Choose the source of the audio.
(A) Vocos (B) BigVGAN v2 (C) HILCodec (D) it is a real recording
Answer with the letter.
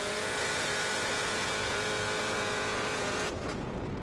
A